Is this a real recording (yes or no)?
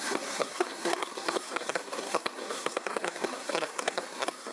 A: no